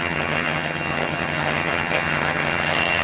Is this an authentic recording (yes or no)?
no